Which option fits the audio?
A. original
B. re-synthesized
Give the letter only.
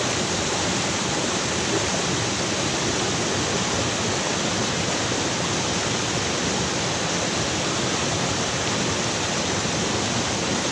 A